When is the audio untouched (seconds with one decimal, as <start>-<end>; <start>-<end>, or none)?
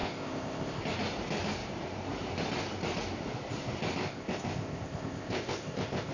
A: 0.8-4.0